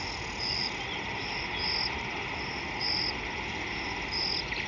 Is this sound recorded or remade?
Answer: recorded